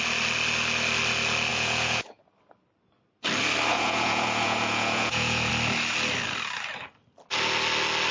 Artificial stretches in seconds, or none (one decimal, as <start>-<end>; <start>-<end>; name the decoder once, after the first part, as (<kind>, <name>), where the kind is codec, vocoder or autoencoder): 1.5-2.2 (vocoder, Vocos); 3.7-5.5